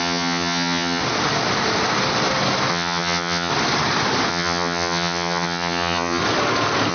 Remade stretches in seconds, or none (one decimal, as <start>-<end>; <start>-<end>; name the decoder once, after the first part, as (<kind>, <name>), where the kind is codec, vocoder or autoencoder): 0.0-1.0 (vocoder, HiFi-GAN); 2.7-3.5; 4.3-6.2